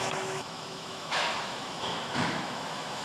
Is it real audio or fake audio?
fake